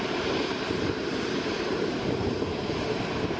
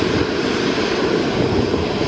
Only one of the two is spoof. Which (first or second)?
first